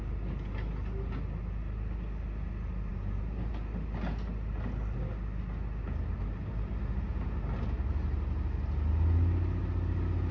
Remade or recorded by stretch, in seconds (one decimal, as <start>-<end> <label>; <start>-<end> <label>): 0.0-10.3 recorded